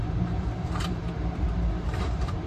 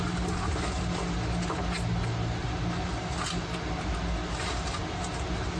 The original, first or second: second